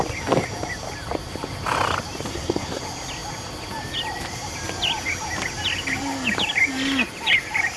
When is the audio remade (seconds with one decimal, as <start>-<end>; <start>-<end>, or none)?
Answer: 2.3-2.8